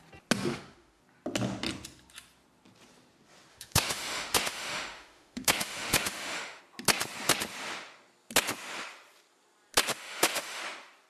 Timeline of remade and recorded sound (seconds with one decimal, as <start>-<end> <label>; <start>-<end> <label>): 0.0-0.5 recorded; 0.5-1.0 remade; 1.0-3.5 recorded; 3.5-6.6 remade; 6.6-9.9 recorded; 9.9-10.6 remade; 10.6-11.1 recorded